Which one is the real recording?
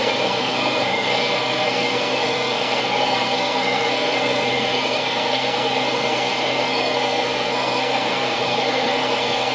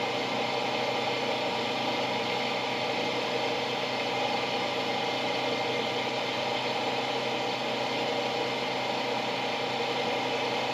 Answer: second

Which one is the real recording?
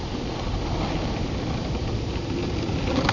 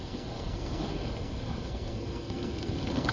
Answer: first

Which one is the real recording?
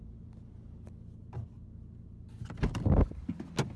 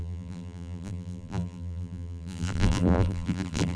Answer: first